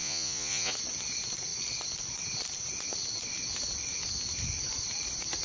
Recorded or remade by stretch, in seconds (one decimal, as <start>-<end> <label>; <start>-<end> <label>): 0.0-0.7 remade; 0.7-5.4 recorded